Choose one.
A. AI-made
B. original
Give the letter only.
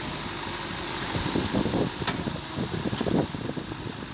B